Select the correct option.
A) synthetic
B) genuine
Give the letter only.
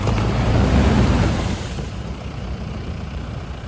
A